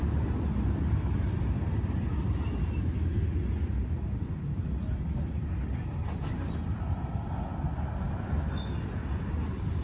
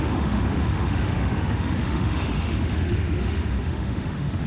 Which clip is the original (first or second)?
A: first